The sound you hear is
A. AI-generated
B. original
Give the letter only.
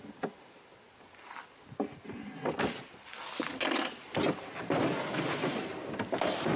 B